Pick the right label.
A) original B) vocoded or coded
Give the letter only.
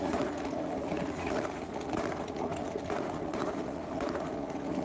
B